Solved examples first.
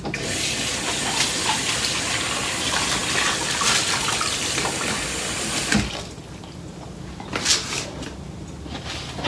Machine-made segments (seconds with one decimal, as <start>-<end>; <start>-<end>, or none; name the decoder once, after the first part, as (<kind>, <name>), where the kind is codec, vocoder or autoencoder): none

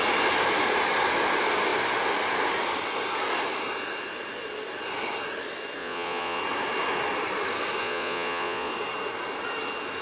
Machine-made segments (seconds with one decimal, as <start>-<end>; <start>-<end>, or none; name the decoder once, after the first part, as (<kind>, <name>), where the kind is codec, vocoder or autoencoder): 5.8-6.4 (vocoder, Vocos); 7.8-8.7

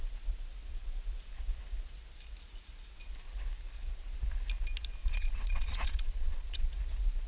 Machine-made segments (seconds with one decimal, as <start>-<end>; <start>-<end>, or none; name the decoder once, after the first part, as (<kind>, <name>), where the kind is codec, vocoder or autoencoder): 5.0-6.7 (vocoder, Vocos)